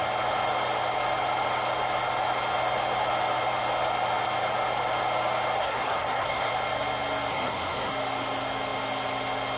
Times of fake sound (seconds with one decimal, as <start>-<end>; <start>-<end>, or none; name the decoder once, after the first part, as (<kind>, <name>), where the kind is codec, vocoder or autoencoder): 5.6-6.5 (codec, SNAC); 7.3-7.9